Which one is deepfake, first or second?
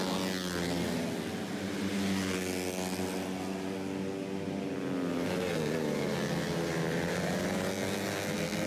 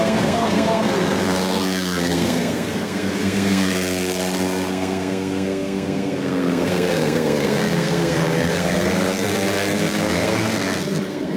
second